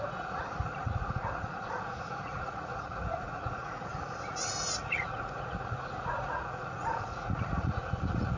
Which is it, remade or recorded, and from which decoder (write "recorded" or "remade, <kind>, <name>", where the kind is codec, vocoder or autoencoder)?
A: remade, vocoder, Vocos